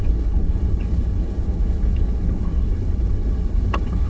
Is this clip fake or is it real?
fake